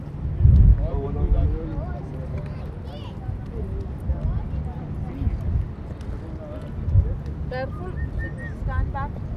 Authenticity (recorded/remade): recorded